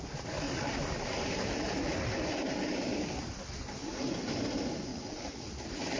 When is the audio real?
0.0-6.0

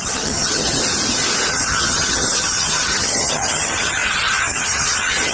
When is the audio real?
0.8-1.5

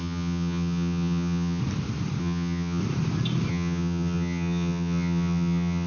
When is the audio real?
1.6-2.2; 2.8-3.5

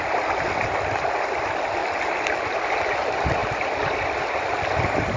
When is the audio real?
0.0-5.2

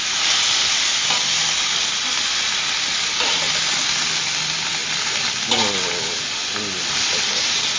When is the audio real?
0.0-7.8

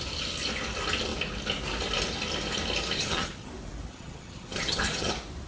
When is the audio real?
0.0-3.0; 3.5-3.9; 5.1-5.5

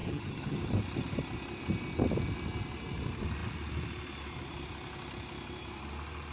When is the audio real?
0.6-6.3